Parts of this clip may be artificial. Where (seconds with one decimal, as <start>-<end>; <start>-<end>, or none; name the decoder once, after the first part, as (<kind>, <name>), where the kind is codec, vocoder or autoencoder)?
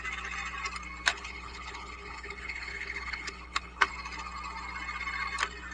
1.1-3.9 (codec, HILCodec)